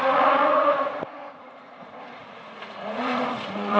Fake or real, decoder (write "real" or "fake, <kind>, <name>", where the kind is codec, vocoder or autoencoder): fake, vocoder, Vocos